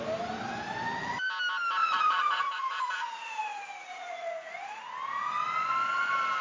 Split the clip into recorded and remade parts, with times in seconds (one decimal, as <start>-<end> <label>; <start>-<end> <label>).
0.0-1.8 recorded; 1.8-4.8 remade; 4.8-6.4 recorded